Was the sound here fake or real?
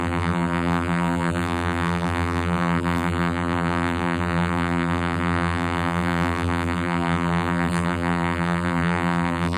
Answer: fake